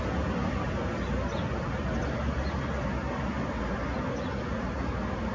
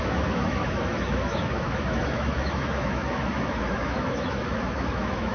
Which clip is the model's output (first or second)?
second